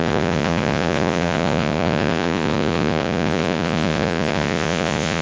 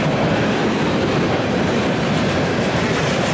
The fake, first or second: first